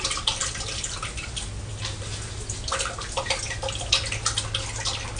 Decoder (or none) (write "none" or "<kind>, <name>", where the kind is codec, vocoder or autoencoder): none